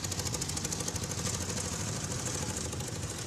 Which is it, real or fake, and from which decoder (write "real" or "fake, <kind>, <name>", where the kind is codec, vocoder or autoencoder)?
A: real